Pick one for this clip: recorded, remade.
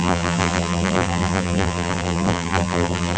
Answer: remade